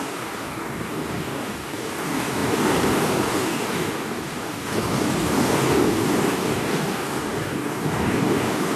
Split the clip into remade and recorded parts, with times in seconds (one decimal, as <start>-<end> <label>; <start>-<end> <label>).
0.0-8.8 remade